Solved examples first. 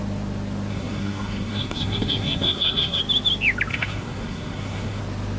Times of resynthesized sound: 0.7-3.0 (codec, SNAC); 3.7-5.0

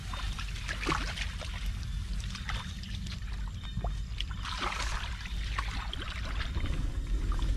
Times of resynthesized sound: none

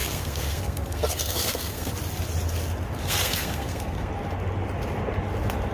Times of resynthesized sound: 0.0-1.9 (codec, SNAC); 3.0-4.1

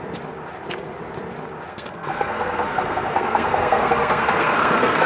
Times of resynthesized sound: 1.7-5.1 (codec, SNAC)

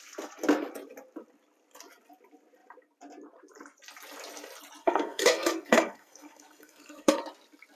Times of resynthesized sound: 4.8-7.2 (codec, SNAC)

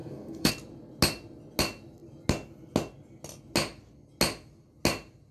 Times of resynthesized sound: 0.0-0.5 (codec, SNAC)

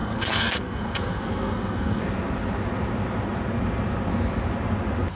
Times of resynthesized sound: 0.0-2.0 (codec, SNAC)

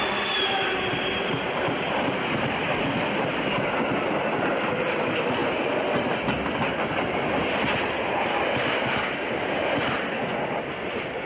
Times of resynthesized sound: none